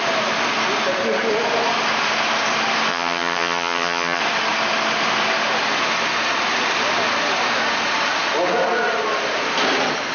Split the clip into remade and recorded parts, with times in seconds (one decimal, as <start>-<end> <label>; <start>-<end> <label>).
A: 0.0-2.9 recorded; 2.9-4.2 remade; 4.2-10.1 recorded